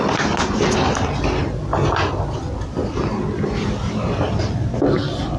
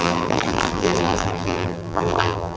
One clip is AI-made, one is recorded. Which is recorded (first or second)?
first